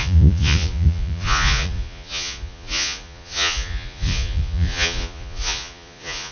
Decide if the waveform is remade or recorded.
remade